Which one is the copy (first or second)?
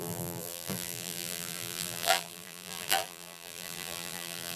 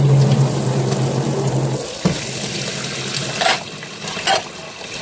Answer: first